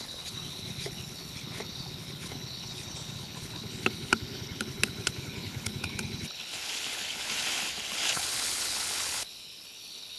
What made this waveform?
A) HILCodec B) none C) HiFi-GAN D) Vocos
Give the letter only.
A